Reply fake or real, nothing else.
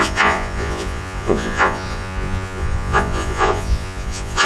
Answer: fake